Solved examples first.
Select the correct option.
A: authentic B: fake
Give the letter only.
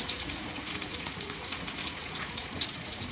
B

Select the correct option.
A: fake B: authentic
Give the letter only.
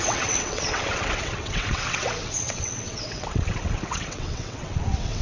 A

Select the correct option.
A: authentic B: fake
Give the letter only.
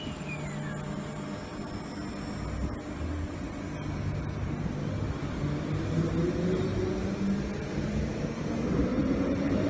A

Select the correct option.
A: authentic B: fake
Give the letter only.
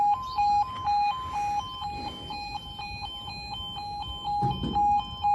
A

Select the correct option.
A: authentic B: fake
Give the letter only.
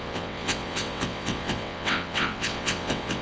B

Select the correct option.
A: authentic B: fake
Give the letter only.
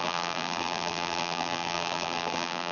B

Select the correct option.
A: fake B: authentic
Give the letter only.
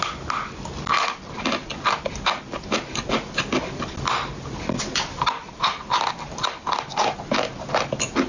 B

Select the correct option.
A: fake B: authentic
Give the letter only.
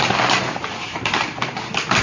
B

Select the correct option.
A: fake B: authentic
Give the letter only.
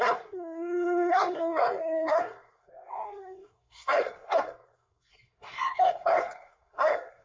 A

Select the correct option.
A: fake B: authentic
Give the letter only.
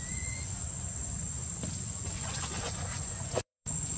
A